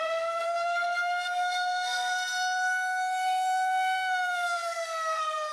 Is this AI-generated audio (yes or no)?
yes